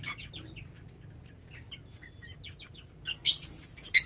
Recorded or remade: recorded